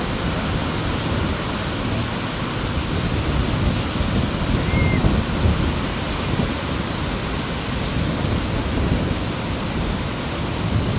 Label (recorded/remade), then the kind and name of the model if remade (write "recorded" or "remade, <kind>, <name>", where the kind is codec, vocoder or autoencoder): recorded